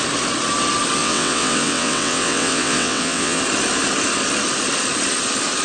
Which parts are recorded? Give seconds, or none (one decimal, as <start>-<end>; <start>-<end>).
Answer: 0.0-1.0; 3.4-5.6